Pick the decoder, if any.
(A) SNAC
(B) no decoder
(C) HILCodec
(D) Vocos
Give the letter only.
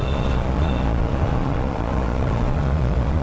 D